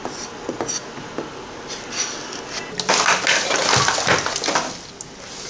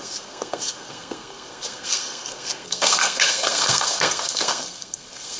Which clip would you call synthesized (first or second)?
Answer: second